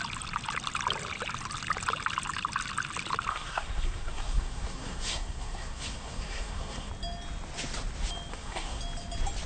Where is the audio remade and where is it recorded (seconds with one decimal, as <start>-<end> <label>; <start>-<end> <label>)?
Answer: 0.0-3.3 recorded; 3.3-6.9 remade; 6.9-8.3 recorded; 8.3-8.8 remade; 8.8-9.5 recorded